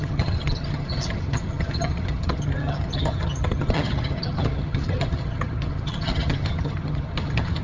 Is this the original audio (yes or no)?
no